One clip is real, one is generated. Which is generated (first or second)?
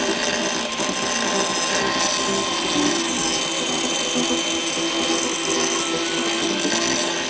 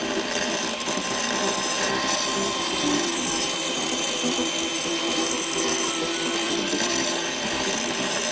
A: second